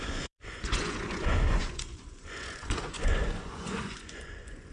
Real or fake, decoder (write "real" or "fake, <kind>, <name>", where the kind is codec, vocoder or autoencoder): fake, vocoder, Vocos